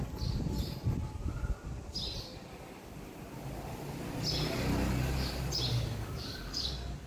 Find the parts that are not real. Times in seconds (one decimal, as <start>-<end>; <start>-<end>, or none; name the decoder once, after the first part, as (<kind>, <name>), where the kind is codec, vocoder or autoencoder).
5.7-7.1 (codec, DAC)